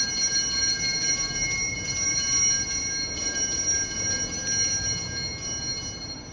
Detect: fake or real real